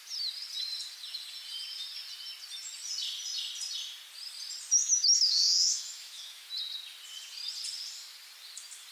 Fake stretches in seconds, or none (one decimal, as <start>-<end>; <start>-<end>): 4.8-6.5